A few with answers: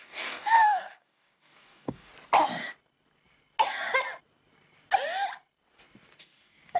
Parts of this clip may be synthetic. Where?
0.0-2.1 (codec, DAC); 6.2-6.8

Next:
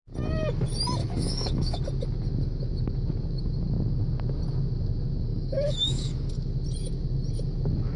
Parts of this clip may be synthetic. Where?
1.0-1.8 (codec, DAC); 5.3-6.3

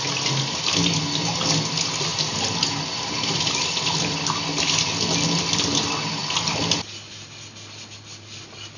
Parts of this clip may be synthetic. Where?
none

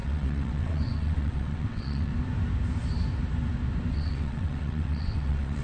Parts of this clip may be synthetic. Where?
0.0-2.1 (vocoder, WaveNeXt); 3.9-5.6

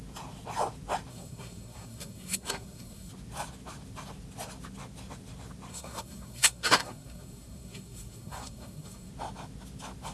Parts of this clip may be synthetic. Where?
1.1-3.1 (codec, SNAC); 5.7-9.1

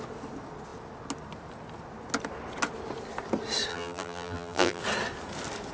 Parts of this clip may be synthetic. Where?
3.7-4.8 (vocoder, BigVGAN v2)

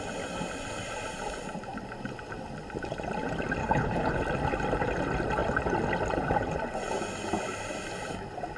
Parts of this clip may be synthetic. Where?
3.6-4.2 (codec, HILCodec)